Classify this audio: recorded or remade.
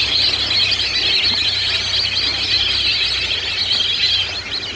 recorded